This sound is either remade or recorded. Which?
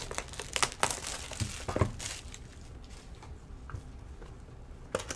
recorded